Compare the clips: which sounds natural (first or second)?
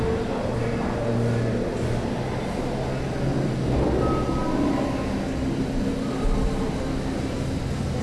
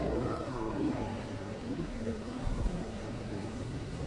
first